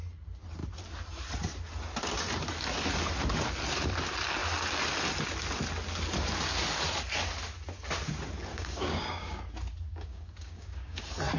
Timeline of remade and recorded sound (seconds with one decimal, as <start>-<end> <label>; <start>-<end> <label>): 0.0-8.5 recorded; 8.5-9.4 remade; 9.4-9.9 recorded; 9.9-11.0 remade; 11.0-11.4 recorded